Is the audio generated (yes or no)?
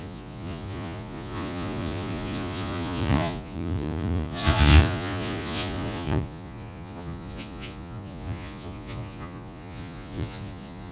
yes